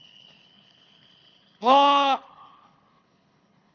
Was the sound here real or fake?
fake